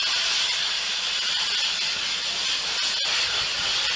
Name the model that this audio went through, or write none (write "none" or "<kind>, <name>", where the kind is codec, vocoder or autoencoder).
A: none